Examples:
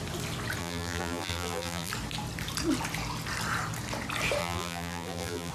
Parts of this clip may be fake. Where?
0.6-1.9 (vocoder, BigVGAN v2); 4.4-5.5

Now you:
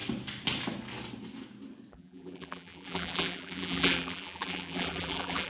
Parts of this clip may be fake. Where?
1.9-5.5 (vocoder, BigVGAN v2)

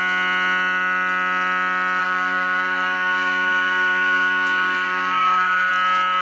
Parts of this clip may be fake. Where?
2.0-5.7 (codec, SNAC)

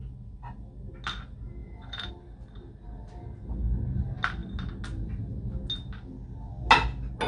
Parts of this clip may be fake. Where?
1.6-2.1 (vocoder, Vocos)

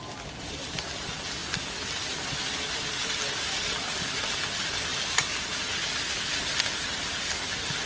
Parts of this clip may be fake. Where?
none

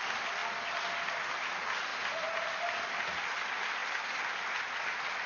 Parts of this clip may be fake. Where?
none

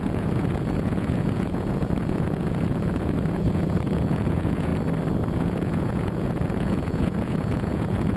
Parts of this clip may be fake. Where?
0.0-4.7 (vocoder, Vocos); 5.3-8.2

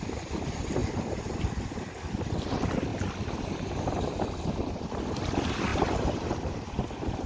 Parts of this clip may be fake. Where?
none